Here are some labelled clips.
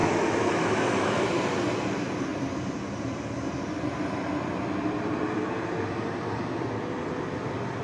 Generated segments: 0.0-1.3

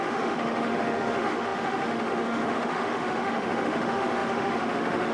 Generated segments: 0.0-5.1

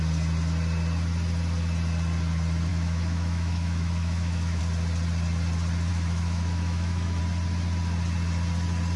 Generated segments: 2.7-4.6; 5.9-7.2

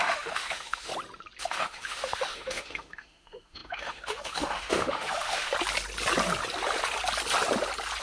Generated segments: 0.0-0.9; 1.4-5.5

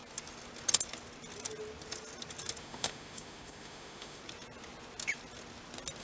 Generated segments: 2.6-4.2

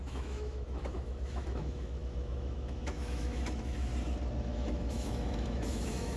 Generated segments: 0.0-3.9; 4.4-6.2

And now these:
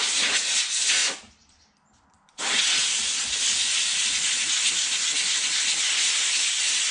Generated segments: none